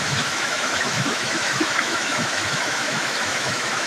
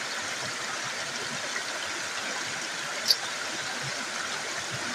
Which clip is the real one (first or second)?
second